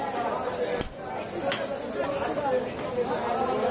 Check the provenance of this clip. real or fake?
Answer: real